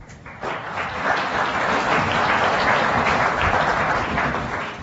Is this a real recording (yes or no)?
no